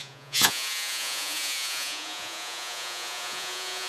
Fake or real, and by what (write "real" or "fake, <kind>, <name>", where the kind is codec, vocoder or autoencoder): fake, vocoder, Vocos